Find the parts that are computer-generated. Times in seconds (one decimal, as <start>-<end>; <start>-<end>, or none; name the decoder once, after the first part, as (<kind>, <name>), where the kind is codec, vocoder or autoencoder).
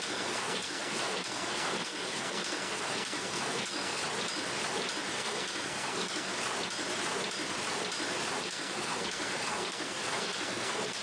0.0-4.0 (codec, SNAC); 5.1-6.3; 8.4-11.0